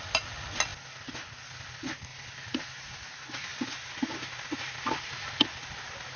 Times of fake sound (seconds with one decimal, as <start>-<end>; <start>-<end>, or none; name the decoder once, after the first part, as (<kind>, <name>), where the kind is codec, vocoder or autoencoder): none